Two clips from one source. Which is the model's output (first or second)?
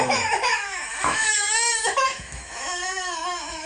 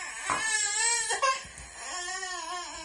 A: first